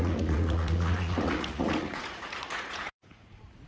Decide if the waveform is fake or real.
fake